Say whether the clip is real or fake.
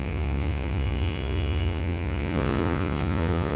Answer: fake